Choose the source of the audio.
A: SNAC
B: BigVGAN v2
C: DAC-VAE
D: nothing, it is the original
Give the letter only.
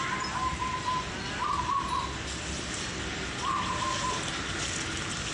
D